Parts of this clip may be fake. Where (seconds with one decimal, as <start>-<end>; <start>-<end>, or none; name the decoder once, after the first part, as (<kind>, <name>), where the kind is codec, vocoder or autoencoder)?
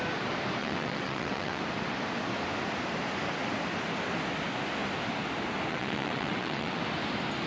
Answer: 0.6-1.6 (vocoder, WaveNeXt); 5.7-6.8